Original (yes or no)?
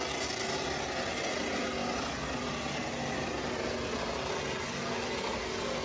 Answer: yes